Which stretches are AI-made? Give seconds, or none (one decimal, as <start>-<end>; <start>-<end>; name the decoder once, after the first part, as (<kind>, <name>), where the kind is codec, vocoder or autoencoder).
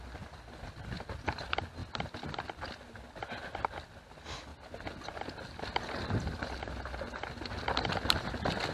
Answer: none